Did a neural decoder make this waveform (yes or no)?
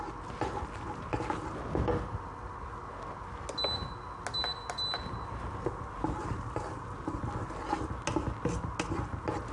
no